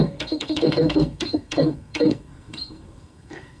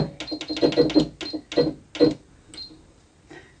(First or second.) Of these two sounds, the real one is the second